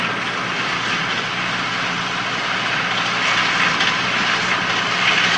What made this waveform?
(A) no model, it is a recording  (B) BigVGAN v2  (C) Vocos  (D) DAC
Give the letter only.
B